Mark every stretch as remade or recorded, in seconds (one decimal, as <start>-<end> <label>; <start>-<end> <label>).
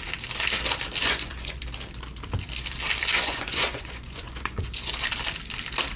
0.0-1.0 recorded; 1.0-1.6 remade; 1.6-3.1 recorded; 3.1-4.9 remade; 4.9-6.0 recorded